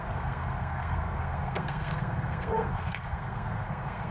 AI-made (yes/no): yes